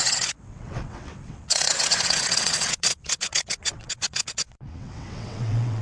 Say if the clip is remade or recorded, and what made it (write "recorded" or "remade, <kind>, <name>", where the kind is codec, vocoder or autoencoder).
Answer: remade, vocoder, WaveNeXt